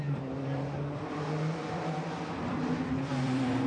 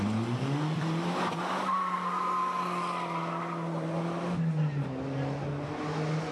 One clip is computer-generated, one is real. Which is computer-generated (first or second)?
first